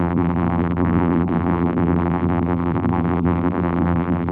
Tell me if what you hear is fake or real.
fake